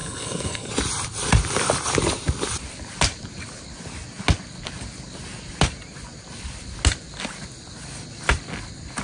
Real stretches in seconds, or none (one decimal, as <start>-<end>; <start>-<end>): 0.7-9.0